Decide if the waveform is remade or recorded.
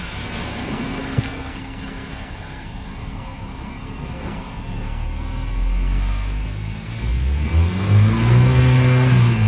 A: remade